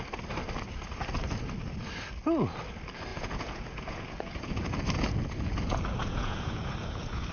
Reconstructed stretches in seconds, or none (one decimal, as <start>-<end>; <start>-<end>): 3.1-7.3